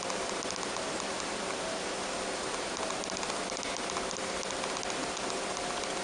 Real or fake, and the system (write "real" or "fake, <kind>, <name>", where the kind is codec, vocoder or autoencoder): real